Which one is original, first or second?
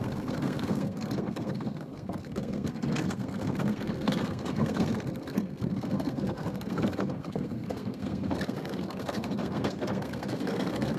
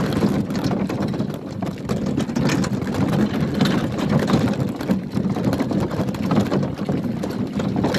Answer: second